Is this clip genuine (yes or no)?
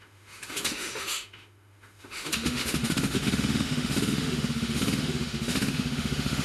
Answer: no